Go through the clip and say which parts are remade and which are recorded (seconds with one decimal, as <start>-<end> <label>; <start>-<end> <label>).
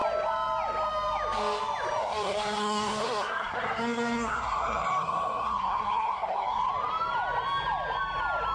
0.0-2.0 recorded; 2.0-6.7 remade; 6.7-8.5 recorded